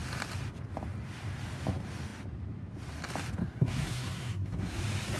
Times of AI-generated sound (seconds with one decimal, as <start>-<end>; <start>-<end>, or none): 3.4-4.8